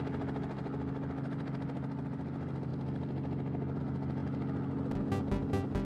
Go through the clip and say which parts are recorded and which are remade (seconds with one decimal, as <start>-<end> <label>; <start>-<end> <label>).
0.0-5.8 recorded